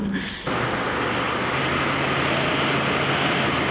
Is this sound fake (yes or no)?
no